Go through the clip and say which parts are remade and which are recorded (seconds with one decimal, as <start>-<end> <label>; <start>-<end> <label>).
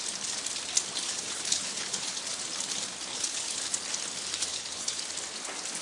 0.0-1.1 recorded; 1.1-2.2 remade; 2.2-3.1 recorded; 3.1-3.6 remade; 3.6-4.5 recorded; 4.5-5.0 remade; 5.0-5.8 recorded